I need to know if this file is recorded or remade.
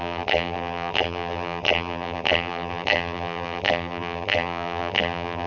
remade